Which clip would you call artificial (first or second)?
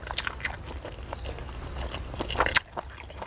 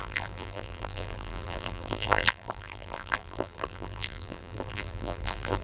second